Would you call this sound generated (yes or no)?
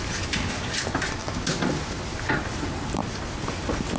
no